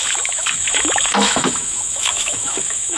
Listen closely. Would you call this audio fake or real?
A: fake